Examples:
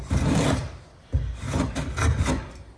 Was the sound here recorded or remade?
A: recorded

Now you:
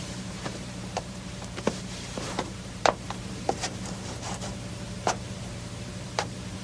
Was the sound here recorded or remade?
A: remade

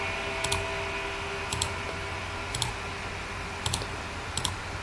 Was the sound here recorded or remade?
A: recorded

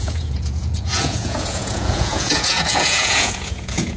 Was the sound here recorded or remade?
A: remade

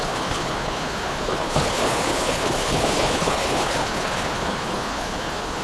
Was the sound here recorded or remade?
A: remade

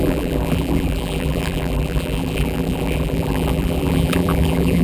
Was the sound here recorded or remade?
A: remade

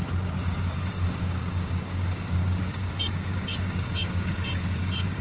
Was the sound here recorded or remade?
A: remade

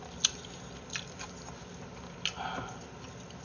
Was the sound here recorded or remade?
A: recorded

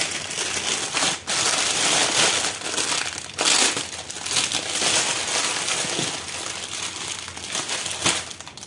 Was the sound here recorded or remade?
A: recorded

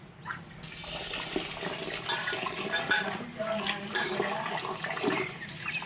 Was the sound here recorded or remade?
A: recorded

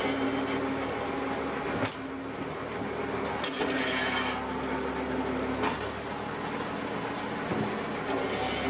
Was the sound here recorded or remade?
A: recorded